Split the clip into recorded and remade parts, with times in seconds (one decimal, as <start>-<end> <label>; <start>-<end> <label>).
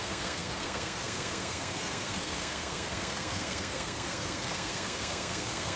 0.0-5.8 remade